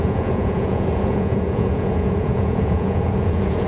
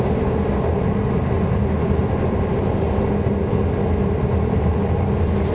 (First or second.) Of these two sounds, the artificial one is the first